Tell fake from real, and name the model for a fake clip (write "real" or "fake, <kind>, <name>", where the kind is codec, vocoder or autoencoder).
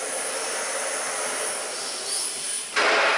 real